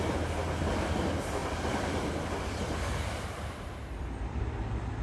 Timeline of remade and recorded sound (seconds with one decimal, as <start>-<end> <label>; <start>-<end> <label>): 0.0-1.4 recorded; 1.4-4.4 remade; 4.4-5.0 recorded